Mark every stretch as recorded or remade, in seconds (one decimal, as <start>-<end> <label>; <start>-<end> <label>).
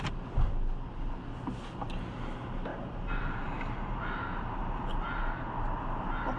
0.0-2.7 recorded; 2.7-5.2 remade; 5.2-6.4 recorded